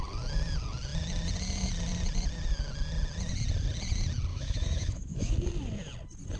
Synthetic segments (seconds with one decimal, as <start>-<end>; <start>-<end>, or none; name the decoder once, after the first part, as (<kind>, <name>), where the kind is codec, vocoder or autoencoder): 4.3-5.3 (autoencoder, DAC-VAE)